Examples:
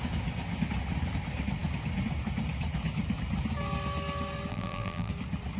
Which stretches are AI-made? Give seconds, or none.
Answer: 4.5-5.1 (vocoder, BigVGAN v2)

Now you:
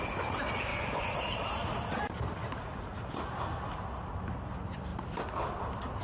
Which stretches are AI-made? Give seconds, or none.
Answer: 0.7-1.2 (vocoder, Vocos)

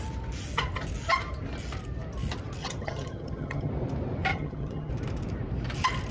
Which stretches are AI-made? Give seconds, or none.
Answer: 2.6-3.7 (vocoder, HiFi-GAN); 4.3-4.9

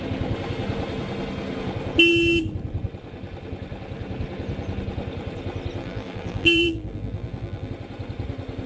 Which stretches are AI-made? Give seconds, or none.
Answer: 5.8-7.7 (vocoder, BigVGAN v2)

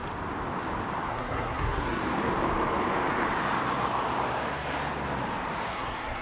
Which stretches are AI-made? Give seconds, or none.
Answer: 1.1-2.0 (codec, SNAC); 5.7-6.2